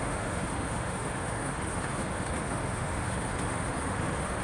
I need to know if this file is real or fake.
fake